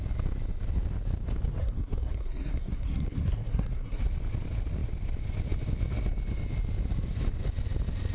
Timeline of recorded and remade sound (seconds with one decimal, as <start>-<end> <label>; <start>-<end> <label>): 0.0-1.6 recorded; 1.6-4.0 remade; 4.0-8.1 recorded